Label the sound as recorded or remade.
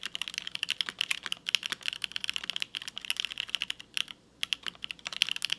recorded